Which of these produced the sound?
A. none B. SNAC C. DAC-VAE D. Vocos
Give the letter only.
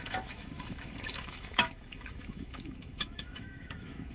C